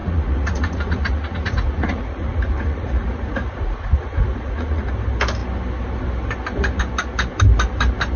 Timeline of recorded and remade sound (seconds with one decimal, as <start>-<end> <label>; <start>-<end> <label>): 0.0-4.9 remade; 4.9-8.2 recorded

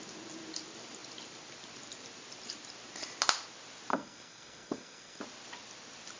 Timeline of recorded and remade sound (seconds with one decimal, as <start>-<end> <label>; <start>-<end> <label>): 0.0-3.9 recorded; 3.9-5.2 remade; 5.2-6.2 recorded

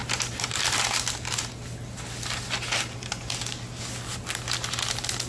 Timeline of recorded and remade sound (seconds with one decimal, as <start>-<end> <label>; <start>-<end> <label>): 0.0-5.3 recorded

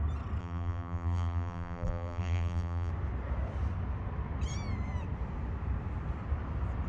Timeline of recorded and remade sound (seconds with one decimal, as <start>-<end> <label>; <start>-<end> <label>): 0.0-0.4 recorded; 0.4-2.9 remade; 2.9-6.9 recorded